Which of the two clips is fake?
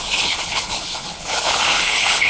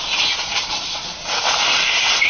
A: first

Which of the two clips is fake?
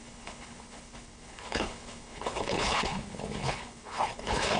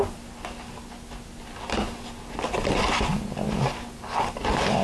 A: first